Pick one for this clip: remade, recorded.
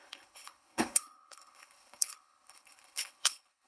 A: remade